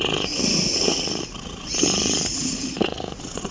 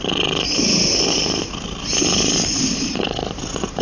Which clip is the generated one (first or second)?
first